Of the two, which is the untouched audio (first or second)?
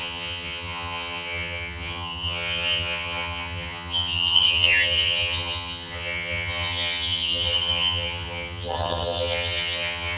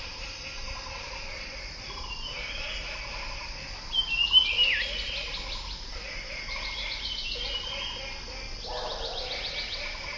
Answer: second